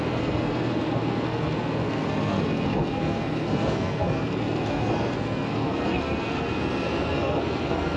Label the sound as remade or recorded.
remade